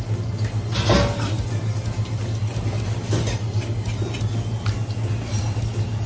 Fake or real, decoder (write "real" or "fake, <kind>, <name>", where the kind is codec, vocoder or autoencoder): real